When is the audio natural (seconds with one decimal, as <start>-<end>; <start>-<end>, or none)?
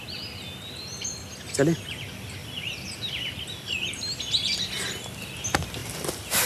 0.0-2.4; 3.1-5.8